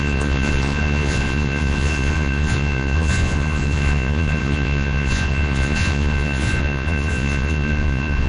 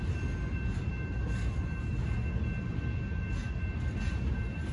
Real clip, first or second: second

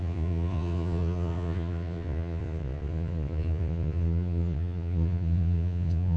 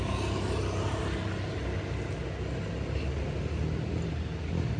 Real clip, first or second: second